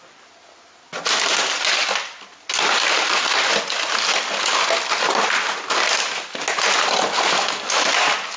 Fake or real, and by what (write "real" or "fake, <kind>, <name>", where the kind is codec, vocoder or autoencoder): real